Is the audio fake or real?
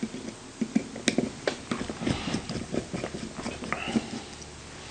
real